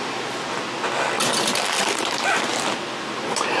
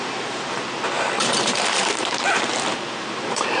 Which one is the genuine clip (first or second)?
first